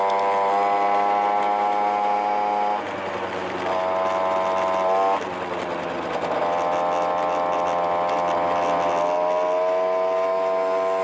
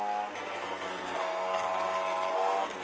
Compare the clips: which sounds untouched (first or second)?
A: first